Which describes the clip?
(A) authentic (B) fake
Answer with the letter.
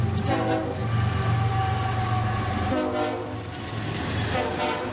A